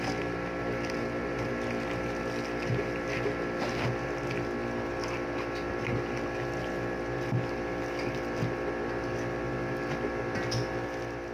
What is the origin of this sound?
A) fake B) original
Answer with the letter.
B